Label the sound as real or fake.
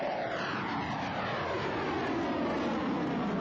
real